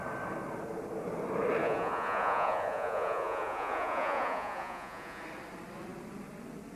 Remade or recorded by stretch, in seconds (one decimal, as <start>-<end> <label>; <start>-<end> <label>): 0.0-1.6 recorded; 1.6-5.2 remade; 5.2-6.8 recorded